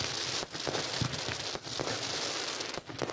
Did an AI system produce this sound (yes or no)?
no